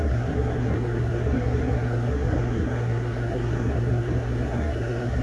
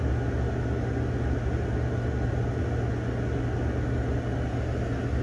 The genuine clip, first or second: second